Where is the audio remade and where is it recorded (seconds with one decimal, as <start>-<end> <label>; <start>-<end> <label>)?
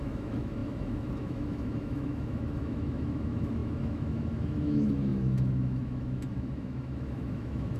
0.0-7.8 remade